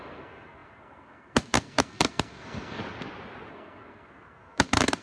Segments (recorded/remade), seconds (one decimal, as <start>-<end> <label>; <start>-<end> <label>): 0.0-2.8 remade; 2.8-3.5 recorded; 3.5-5.0 remade